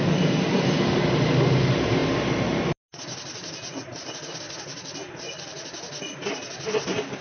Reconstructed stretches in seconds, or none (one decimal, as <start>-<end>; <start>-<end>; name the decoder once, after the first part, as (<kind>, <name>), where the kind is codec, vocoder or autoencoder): none